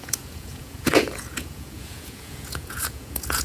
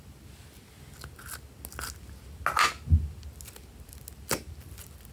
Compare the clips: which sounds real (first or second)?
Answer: second